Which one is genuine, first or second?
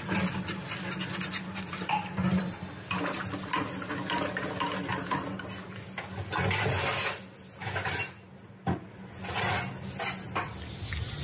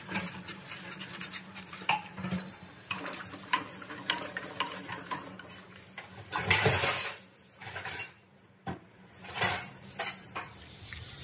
first